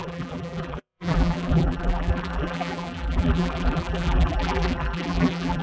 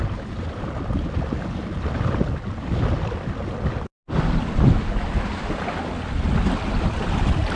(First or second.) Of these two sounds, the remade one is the first